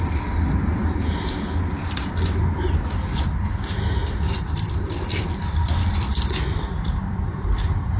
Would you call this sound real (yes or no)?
no